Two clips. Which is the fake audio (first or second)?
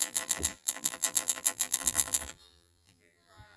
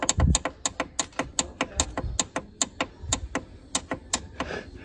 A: first